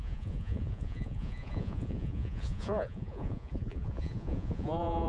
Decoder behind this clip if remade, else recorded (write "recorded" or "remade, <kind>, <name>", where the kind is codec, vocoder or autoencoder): remade, vocoder, Vocos